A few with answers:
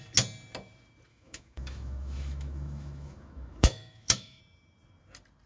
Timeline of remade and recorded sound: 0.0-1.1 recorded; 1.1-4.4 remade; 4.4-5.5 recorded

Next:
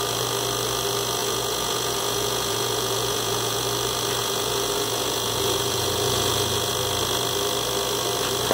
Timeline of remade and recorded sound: 0.0-1.2 recorded; 1.2-3.6 remade; 3.6-4.2 recorded; 4.2-6.7 remade; 6.7-8.5 recorded

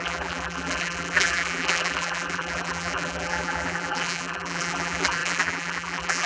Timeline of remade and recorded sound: 0.0-6.3 remade

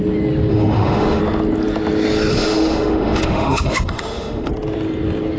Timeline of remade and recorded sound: 0.0-0.5 recorded; 0.5-1.2 remade; 1.2-2.3 recorded; 2.3-4.5 remade; 4.5-5.4 recorded

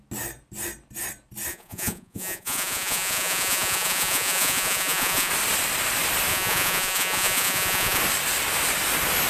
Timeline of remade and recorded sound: 0.0-1.5 recorded; 1.5-5.3 remade; 5.3-6.3 recorded; 6.3-8.0 remade; 8.0-9.3 recorded